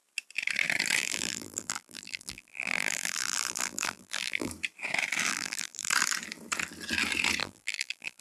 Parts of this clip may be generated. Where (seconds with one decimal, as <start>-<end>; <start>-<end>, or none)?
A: 1.0-4.5; 5.3-5.9; 7.4-8.2